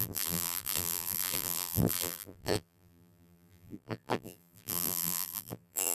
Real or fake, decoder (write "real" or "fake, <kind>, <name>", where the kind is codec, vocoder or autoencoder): fake, vocoder, BigVGAN v2